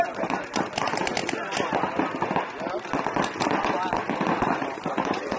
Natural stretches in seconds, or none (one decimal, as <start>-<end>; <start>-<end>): 1.2-4.4